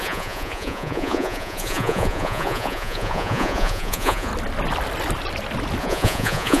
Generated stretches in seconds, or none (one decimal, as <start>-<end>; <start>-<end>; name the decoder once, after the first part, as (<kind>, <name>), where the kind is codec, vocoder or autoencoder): 0.0-4.3 (vocoder, Vocos); 5.8-6.6